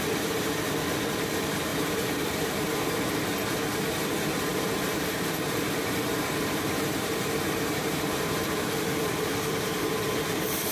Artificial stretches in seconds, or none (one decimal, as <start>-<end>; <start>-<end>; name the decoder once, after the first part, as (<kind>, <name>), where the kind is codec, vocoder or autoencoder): 1.7-2.9 (vocoder, BigVGAN v2); 4.5-9.1